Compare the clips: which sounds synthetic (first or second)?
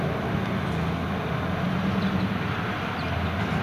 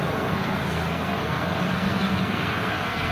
second